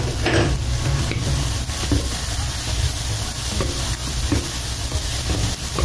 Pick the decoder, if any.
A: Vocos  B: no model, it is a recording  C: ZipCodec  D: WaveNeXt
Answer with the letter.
B